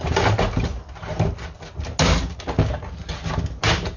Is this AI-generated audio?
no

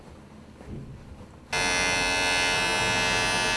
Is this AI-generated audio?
no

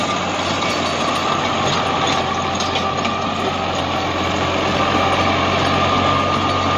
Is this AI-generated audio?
no